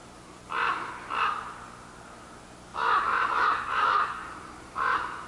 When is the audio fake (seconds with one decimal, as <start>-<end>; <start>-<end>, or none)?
2.7-3.8; 4.2-5.3